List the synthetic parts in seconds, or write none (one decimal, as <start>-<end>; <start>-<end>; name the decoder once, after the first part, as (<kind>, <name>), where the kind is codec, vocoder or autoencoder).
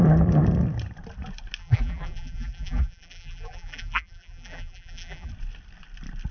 1.6-5.3 (vocoder, BigVGAN v2)